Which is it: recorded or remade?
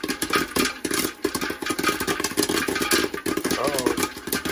recorded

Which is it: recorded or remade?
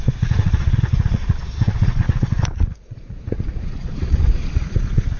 remade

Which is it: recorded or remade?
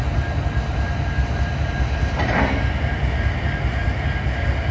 recorded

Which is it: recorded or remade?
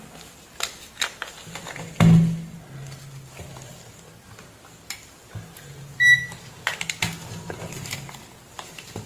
recorded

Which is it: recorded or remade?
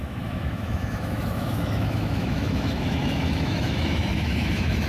remade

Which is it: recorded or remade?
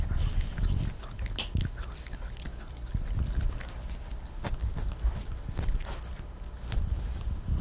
recorded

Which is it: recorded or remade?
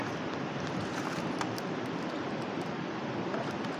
recorded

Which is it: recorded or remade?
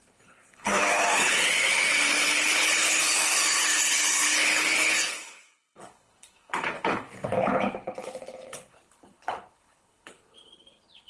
remade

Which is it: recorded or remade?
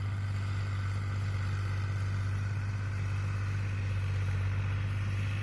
recorded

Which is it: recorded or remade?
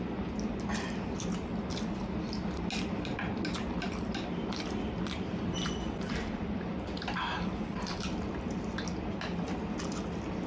recorded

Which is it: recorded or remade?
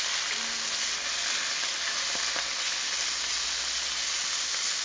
recorded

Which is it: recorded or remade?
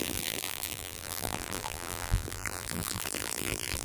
remade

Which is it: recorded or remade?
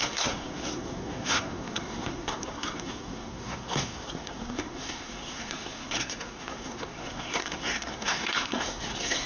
remade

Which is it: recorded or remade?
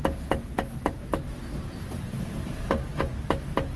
recorded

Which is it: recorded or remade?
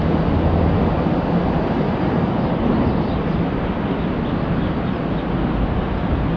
recorded